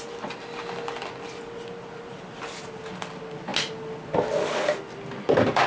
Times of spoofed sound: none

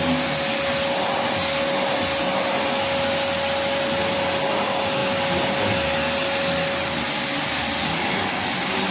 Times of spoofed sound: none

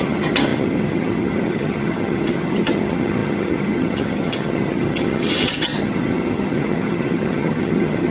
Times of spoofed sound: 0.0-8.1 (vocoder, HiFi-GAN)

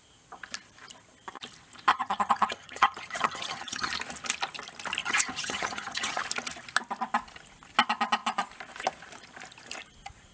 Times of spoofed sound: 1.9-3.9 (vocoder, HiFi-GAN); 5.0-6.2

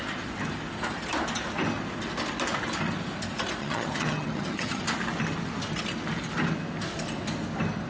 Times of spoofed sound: 3.6-4.8 (vocoder, HiFi-GAN)